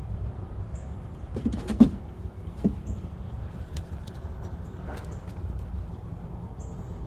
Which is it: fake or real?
fake